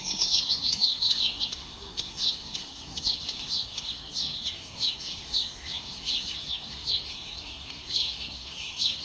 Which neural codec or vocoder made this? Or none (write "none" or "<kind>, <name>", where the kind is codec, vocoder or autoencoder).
codec, SNAC